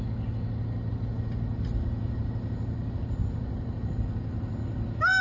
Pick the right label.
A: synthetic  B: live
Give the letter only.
B